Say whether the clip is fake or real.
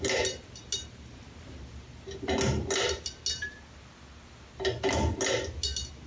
real